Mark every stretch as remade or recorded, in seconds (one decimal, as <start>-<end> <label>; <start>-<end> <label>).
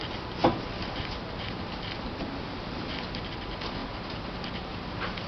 0.0-5.3 recorded